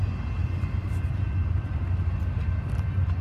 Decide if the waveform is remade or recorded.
recorded